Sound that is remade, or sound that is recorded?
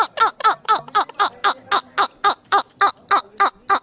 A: recorded